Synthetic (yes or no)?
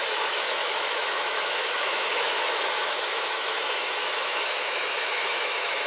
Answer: yes